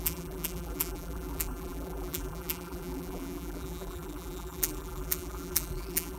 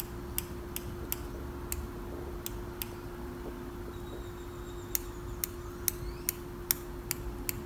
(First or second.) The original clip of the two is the second